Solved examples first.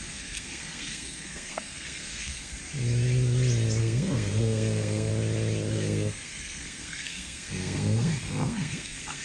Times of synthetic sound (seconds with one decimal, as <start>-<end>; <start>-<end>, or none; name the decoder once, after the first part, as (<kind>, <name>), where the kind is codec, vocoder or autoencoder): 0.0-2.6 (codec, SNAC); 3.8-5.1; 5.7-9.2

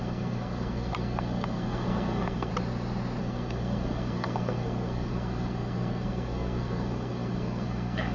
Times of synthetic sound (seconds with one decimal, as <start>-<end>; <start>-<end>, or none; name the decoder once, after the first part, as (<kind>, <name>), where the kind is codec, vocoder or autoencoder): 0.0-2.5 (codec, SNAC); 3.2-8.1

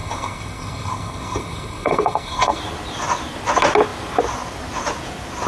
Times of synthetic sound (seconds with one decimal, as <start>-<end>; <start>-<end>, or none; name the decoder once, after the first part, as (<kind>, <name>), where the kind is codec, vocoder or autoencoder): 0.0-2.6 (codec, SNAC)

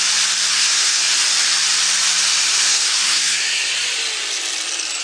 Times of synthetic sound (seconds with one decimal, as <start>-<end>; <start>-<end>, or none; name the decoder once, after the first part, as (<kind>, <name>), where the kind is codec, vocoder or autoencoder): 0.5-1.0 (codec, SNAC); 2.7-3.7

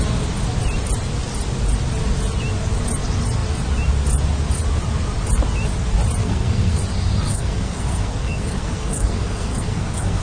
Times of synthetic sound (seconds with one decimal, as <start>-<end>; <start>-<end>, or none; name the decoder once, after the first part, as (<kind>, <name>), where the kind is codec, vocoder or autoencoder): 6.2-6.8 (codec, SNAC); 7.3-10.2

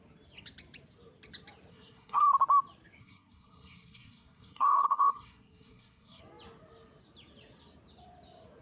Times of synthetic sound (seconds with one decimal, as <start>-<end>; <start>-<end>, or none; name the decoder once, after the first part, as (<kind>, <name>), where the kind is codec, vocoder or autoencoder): 1.7-2.2 (codec, SNAC); 3.0-6.2

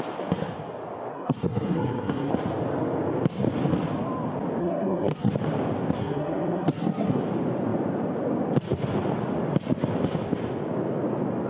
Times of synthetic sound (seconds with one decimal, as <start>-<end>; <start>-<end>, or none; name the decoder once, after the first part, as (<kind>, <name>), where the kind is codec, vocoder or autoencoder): 1.1-2.3 (codec, SNAC); 4.6-5.3; 6.0-7.2

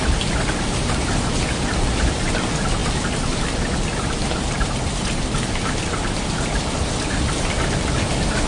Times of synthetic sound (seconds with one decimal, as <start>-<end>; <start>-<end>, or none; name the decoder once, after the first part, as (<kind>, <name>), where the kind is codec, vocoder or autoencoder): none